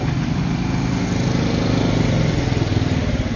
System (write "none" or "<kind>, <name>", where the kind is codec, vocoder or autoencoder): none